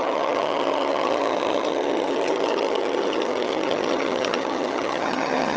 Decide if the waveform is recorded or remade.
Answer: remade